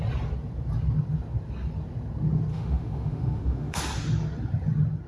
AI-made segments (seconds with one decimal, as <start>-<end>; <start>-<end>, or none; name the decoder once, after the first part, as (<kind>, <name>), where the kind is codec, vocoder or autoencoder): 2.5-3.8 (autoencoder, DAC-VAE)

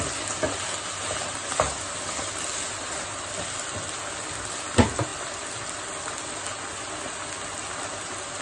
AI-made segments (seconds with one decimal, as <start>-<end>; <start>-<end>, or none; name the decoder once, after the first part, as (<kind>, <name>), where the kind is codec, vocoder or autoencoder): none

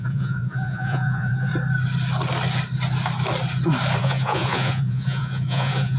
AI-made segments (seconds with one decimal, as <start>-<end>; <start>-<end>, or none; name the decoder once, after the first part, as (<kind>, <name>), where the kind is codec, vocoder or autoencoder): 0.0-1.5 (vocoder, Vocos); 4.0-6.0

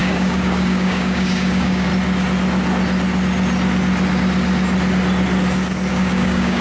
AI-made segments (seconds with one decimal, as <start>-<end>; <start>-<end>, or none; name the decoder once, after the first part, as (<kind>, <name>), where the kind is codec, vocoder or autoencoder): 0.0-1.9 (codec, DAC); 5.9-6.6

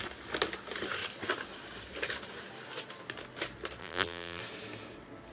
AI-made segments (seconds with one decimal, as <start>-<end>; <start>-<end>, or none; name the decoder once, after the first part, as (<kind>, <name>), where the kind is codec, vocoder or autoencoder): 3.8-4.4 (vocoder, BigVGAN v2)